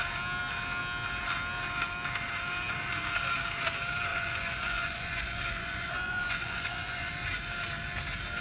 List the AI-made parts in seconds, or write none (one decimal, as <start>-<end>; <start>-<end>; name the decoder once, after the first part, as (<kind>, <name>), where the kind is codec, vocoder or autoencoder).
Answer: 4.1-7.1 (vocoder, Vocos)